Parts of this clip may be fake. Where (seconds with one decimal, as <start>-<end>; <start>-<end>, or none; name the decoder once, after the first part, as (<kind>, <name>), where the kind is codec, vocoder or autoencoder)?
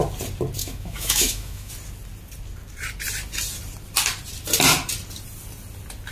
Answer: 0.6-1.7 (autoencoder, DAC-VAE)